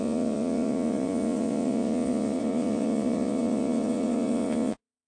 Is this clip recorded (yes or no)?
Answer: no